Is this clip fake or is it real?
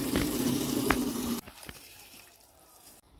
fake